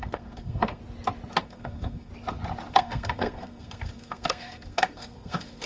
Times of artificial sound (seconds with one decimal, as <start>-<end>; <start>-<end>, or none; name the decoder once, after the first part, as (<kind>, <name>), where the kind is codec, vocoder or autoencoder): 0.0-0.8 (codec, SNAC); 1.4-2.1; 2.7-5.7